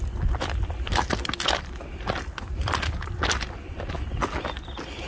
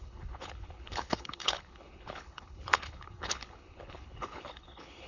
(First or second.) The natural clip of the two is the first